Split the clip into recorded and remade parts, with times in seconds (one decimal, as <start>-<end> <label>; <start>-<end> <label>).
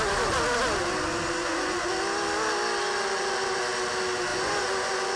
0.0-1.4 recorded; 1.4-1.9 remade; 1.9-4.3 recorded; 4.3-5.2 remade